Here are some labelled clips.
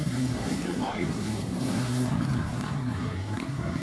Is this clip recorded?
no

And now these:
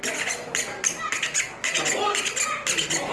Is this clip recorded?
yes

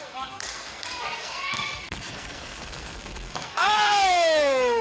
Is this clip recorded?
no